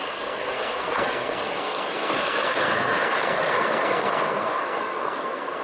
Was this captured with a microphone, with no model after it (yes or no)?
no